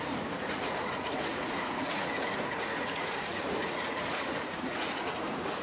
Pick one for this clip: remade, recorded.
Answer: remade